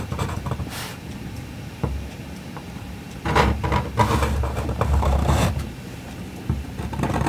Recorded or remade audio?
remade